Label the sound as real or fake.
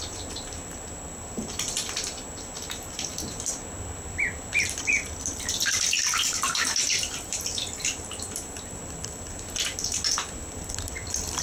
real